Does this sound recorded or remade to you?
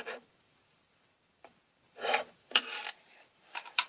remade